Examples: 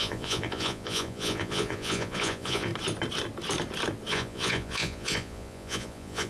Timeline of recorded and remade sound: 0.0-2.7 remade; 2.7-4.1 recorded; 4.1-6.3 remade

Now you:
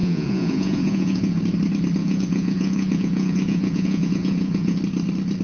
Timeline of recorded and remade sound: 0.0-1.4 remade; 1.4-2.0 recorded; 2.0-4.8 remade; 4.8-5.4 recorded

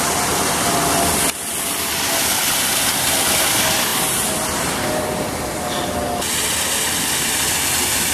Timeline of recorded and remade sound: 0.0-8.1 recorded

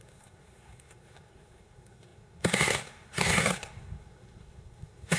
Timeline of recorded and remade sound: 0.0-5.2 remade

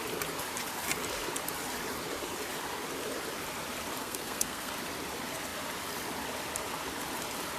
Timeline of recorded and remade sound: 0.0-4.0 recorded; 4.0-4.7 remade; 4.7-7.6 recorded

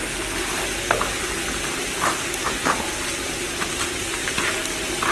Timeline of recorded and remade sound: 0.0-5.1 recorded

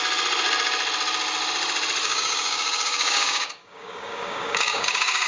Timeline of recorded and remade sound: 0.0-2.0 recorded; 2.0-5.3 remade

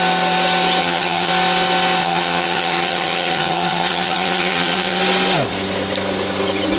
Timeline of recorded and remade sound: 0.0-0.8 recorded; 0.8-1.3 remade; 1.3-2.0 recorded; 2.0-5.0 remade; 5.0-6.8 recorded